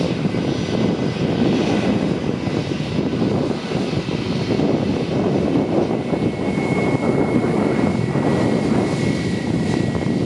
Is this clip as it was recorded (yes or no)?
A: yes